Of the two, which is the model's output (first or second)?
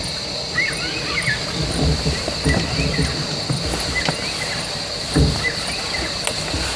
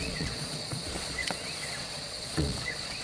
second